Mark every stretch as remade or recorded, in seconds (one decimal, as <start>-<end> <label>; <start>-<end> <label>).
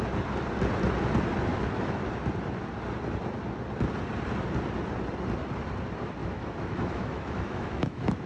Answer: 0.0-1.5 recorded; 1.5-2.1 remade; 2.1-6.2 recorded; 6.2-8.3 remade